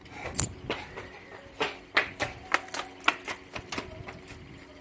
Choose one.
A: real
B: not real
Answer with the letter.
A